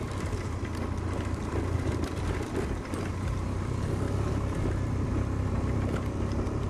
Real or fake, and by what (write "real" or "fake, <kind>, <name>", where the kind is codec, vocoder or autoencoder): fake, vocoder, BigVGAN v2